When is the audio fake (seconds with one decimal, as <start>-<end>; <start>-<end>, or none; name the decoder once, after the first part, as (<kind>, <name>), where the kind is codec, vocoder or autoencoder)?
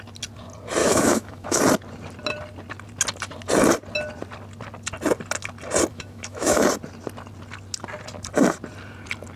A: 0.8-1.6 (autoencoder, DAC-VAE); 5.9-6.7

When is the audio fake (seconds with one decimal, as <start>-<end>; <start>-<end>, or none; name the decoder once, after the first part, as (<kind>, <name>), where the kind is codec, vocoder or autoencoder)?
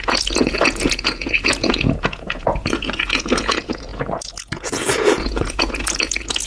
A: 0.0-6.5 (vocoder, Vocos)